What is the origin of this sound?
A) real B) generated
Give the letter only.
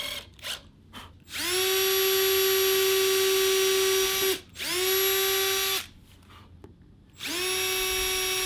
A